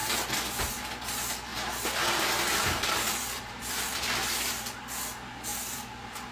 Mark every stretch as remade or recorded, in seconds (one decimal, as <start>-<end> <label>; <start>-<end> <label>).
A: 0.0-0.7 remade; 0.7-1.5 recorded; 1.5-4.8 remade; 4.8-5.5 recorded; 5.5-6.3 remade